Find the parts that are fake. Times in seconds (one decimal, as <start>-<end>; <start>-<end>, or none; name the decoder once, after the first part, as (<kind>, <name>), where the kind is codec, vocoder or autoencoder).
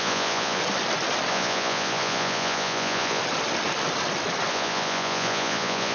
0.0-0.6 (vocoder, Vocos); 1.3-3.2; 4.5-5.9